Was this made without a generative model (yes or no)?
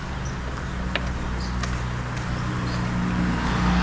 yes